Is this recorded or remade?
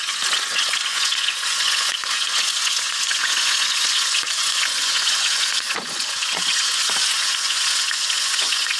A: remade